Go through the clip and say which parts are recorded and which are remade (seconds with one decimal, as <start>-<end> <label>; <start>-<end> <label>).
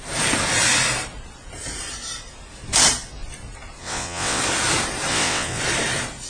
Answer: 0.0-3.8 recorded; 3.8-4.4 remade; 4.4-5.1 recorded; 5.1-5.6 remade; 5.6-6.3 recorded